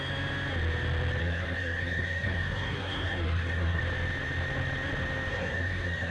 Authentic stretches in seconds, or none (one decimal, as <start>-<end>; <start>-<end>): 0.0-1.2; 3.8-5.3